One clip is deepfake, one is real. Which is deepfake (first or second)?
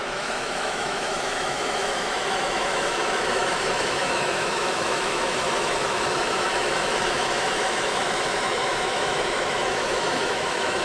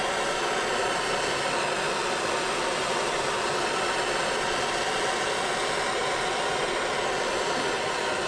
first